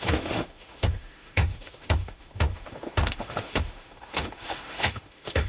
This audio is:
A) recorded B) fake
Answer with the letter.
B